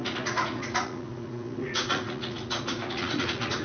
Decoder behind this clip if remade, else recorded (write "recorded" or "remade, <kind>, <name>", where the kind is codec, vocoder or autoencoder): remade, vocoder, Vocos